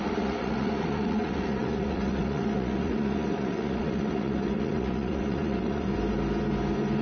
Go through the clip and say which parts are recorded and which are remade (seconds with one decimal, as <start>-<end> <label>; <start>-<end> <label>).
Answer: 0.0-5.9 remade; 5.9-7.0 recorded